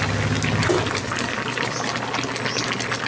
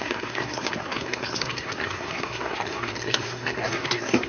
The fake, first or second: second